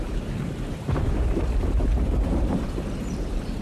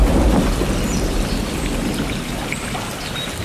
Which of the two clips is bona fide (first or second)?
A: second